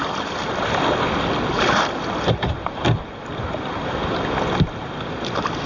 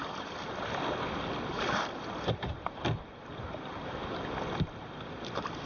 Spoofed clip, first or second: second